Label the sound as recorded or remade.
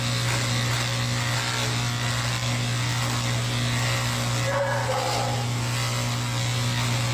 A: recorded